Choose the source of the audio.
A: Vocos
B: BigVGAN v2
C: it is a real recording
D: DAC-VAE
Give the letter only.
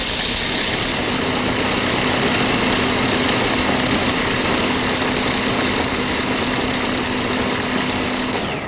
C